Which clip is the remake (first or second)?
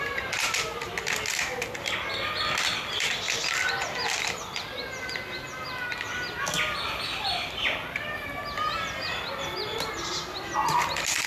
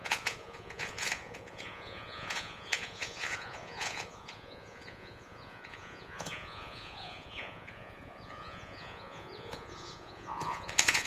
second